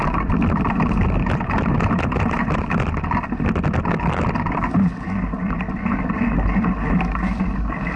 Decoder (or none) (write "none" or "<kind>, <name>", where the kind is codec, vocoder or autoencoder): none